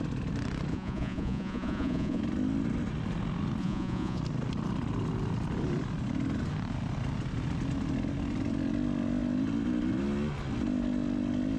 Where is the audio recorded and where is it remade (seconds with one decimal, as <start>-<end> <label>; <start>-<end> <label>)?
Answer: 0.0-0.7 recorded; 0.7-2.2 remade; 2.2-3.6 recorded; 3.6-4.2 remade; 4.2-11.6 recorded